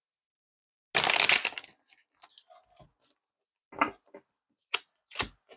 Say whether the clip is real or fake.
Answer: real